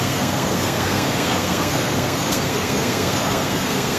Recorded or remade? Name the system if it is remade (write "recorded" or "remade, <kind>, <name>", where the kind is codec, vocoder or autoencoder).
remade, codec, SNAC